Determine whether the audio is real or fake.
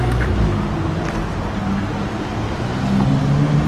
real